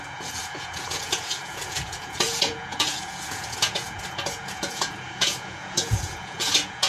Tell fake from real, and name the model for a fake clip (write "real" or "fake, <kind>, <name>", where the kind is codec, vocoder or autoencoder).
fake, vocoder, Vocos